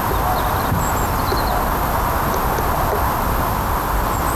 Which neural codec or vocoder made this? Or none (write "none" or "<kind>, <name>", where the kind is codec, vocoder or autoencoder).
none